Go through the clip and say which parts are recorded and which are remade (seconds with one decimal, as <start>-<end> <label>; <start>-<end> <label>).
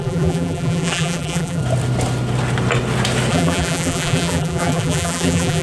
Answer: 0.0-1.6 remade; 1.6-3.3 recorded; 3.3-5.6 remade